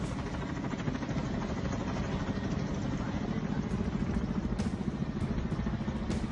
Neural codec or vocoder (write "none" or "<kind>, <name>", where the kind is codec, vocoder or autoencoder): none